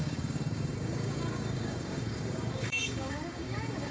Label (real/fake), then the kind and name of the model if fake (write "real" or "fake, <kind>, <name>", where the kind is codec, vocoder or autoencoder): fake, codec, DAC